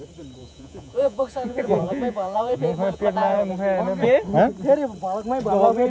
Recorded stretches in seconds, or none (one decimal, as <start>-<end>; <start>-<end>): 0.0-0.4; 3.5-5.9

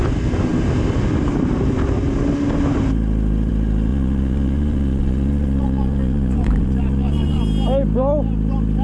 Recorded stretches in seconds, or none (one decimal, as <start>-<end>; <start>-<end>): 0.0-3.9; 7.4-8.8